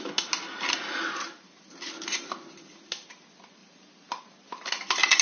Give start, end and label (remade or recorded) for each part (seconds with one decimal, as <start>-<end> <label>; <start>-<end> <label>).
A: 0.0-3.6 recorded; 3.6-4.2 remade; 4.2-5.2 recorded